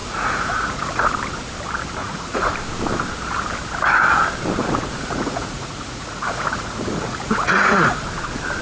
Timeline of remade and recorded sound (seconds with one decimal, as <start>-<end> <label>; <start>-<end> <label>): 0.0-1.1 remade; 1.1-2.0 recorded; 2.0-2.5 remade; 2.5-4.6 recorded; 4.6-8.0 remade; 8.0-8.6 recorded